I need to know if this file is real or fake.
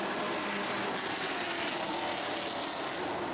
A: real